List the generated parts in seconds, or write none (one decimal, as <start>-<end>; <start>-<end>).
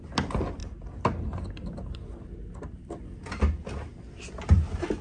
none